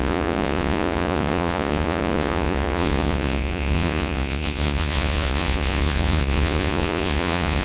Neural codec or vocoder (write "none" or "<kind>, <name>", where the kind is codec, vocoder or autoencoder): vocoder, Vocos